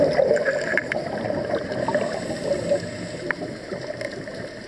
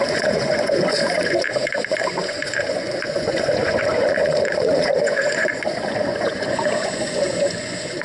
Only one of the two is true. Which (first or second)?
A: first